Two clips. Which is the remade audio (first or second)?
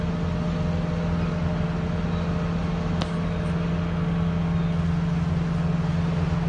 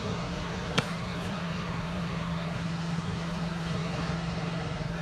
second